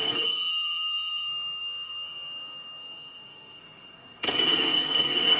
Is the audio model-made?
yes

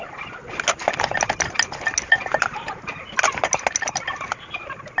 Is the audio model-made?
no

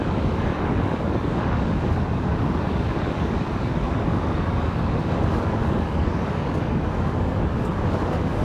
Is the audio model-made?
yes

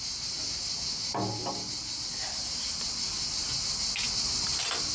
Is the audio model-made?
no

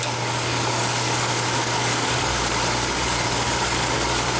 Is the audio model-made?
yes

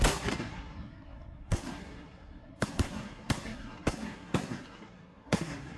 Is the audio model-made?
yes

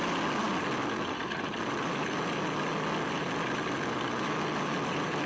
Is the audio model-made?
no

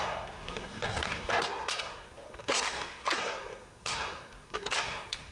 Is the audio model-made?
yes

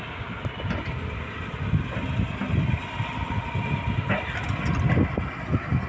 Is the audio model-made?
no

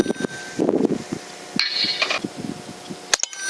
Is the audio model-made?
no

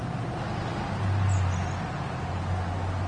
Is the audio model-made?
no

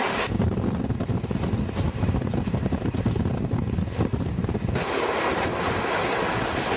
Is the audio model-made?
no